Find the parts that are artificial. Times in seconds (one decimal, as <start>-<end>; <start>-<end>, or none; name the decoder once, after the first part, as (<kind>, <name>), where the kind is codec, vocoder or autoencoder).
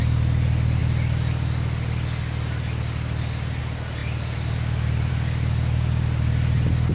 none